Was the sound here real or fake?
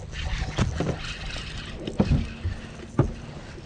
real